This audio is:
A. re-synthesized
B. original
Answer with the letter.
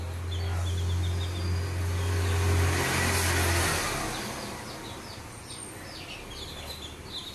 B